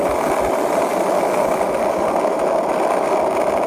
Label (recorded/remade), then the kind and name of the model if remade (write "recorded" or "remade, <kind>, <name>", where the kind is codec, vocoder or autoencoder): recorded